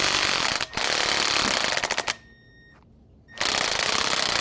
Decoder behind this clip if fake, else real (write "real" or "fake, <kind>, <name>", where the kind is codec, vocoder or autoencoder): fake, vocoder, BigVGAN v2